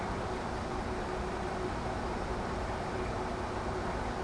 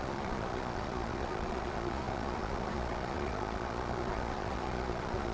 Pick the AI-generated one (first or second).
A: second